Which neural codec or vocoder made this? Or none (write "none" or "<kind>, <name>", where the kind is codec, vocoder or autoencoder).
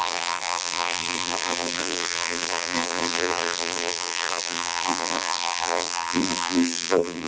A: vocoder, BigVGAN v2